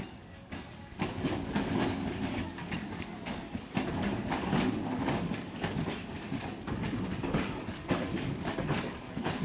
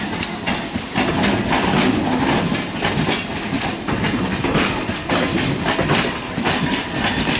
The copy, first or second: first